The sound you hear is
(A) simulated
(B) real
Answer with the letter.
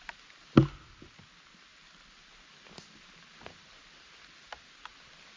B